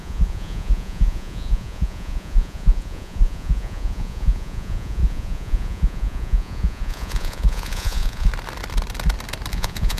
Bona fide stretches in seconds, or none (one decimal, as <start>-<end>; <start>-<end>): 8.3-9.5